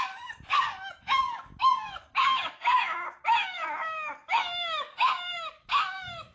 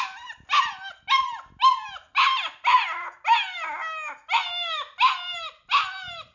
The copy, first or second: first